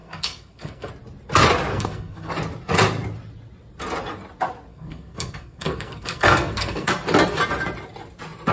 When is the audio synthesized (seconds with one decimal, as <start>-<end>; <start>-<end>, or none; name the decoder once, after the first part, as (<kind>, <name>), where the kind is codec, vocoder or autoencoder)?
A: 0.0-0.9 (codec, SNAC); 1.7-2.3; 4.7-6.9